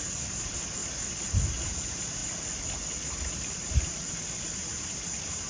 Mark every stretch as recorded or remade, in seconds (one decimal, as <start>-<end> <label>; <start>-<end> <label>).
0.0-0.8 remade; 0.8-1.7 recorded; 1.7-2.2 remade; 2.2-3.7 recorded; 3.7-5.5 remade